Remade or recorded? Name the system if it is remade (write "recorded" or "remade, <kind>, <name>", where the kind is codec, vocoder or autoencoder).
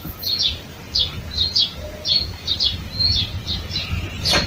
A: remade, vocoder, Vocos